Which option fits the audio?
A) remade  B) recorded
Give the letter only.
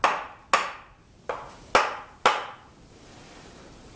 B